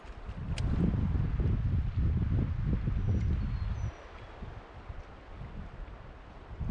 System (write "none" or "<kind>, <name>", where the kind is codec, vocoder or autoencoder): none